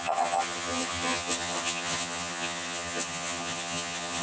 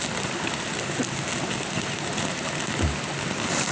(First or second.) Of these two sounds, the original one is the second